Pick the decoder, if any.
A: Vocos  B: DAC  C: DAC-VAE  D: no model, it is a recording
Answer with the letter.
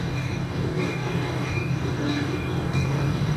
B